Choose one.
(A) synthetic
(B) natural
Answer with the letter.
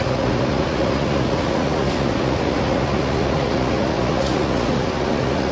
A